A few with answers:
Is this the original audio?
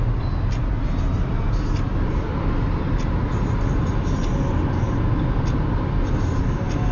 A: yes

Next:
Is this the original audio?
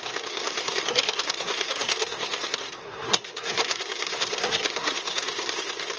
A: no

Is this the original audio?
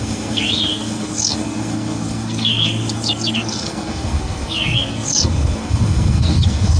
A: no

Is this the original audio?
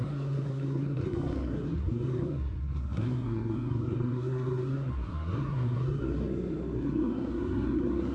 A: no